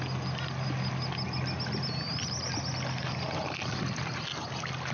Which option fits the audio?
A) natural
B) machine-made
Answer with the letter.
A